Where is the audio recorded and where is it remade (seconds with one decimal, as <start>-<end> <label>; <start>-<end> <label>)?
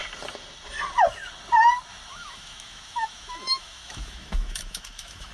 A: 0.0-2.1 recorded; 2.1-5.3 remade